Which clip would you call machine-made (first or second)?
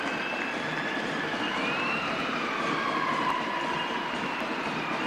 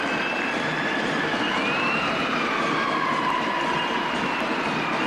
first